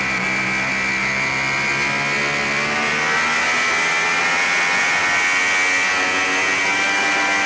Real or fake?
real